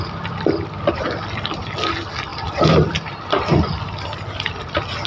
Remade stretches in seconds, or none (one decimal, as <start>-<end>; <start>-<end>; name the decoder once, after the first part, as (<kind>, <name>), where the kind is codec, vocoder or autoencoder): none